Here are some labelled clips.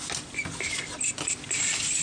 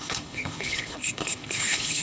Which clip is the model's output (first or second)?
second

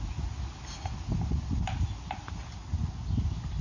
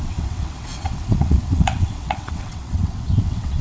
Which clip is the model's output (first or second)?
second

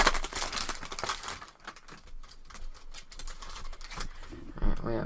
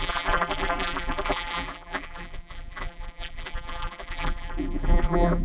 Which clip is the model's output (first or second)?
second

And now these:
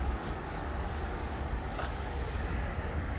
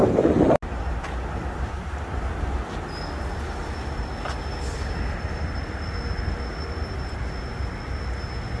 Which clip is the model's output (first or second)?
first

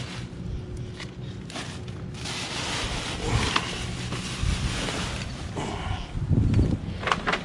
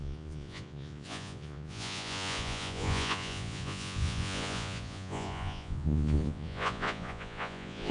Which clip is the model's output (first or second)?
second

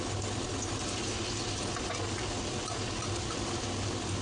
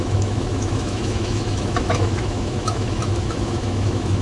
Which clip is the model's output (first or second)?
second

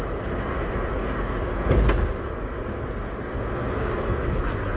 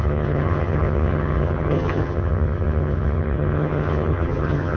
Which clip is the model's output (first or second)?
second